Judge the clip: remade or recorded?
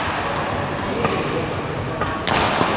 recorded